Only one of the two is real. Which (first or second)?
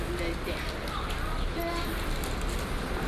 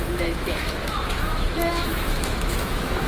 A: first